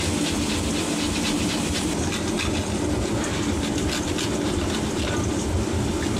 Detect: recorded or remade recorded